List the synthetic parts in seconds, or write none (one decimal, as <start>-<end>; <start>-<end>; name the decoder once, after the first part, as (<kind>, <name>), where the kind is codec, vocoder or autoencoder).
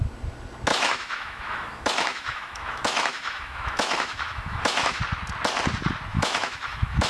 0.7-5.0 (autoencoder, DAC-VAE); 6.1-7.1